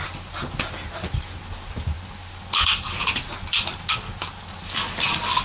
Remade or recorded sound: recorded